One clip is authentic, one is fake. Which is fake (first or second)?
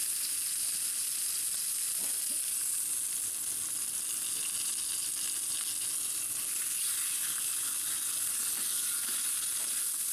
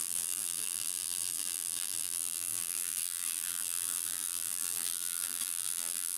second